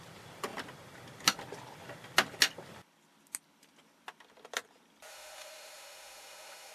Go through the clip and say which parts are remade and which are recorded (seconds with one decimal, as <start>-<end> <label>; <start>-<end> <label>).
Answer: 0.0-5.1 recorded; 5.1-6.7 remade

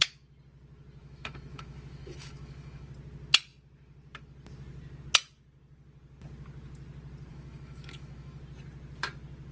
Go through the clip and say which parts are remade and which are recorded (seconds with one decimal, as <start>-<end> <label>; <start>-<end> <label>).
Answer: 0.0-1.0 recorded; 1.0-2.9 remade; 2.9-7.3 recorded; 7.3-8.4 remade; 8.4-9.5 recorded

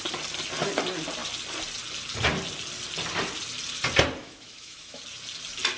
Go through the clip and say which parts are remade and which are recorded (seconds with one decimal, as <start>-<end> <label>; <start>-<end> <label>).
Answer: 0.0-4.2 recorded; 4.2-5.0 remade; 5.0-5.8 recorded

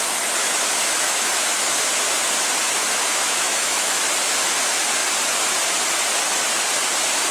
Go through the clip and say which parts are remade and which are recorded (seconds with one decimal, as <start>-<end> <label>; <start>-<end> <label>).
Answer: 0.0-0.4 recorded; 0.4-1.8 remade; 1.8-2.8 recorded; 2.8-4.0 remade; 4.0-7.3 recorded